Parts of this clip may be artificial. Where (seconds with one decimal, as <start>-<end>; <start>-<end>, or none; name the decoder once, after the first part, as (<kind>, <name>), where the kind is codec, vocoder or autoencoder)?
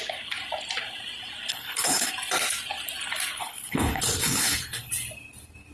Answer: 1.5-2.1 (codec, HILCodec); 3.4-4.9